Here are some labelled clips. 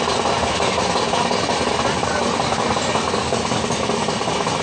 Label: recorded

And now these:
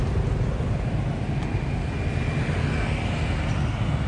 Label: recorded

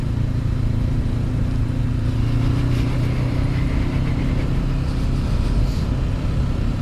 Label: recorded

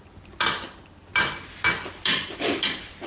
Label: recorded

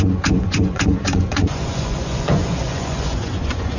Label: remade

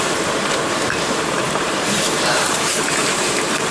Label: remade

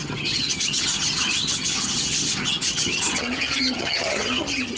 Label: remade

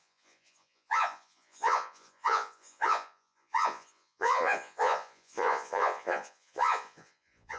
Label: remade